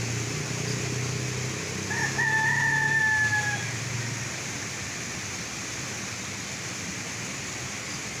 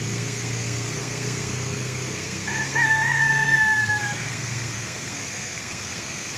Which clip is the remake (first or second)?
second